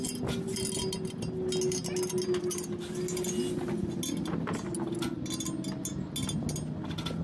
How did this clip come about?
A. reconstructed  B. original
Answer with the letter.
B